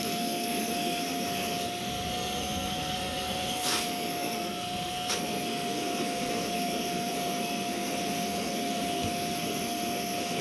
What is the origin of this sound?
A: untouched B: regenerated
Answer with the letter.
B